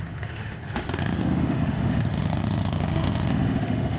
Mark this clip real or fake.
fake